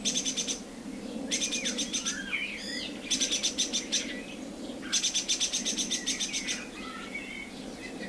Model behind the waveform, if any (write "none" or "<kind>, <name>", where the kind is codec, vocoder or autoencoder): none